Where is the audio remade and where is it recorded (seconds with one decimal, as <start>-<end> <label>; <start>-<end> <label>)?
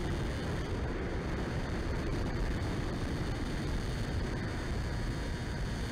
0.0-0.6 recorded; 0.6-5.9 remade